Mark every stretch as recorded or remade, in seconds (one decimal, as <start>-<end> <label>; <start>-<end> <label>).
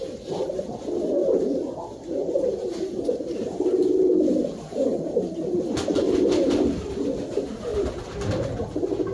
0.0-1.2 recorded; 1.2-2.5 remade; 2.5-3.8 recorded; 3.8-7.3 remade; 7.3-9.1 recorded